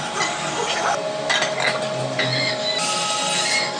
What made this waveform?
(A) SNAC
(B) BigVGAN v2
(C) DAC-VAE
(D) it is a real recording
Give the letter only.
D